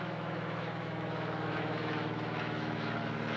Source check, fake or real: fake